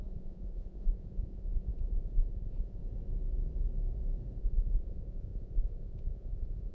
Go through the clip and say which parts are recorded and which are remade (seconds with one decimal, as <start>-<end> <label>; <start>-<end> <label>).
0.0-2.8 remade; 2.8-4.4 recorded; 4.4-6.7 remade